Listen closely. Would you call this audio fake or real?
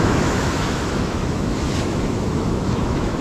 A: fake